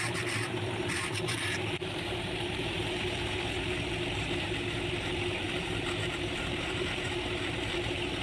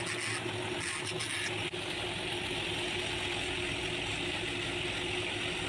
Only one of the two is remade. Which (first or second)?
first